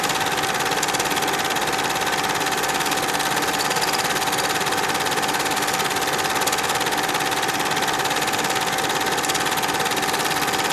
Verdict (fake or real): real